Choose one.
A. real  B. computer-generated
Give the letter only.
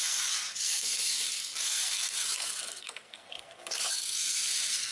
B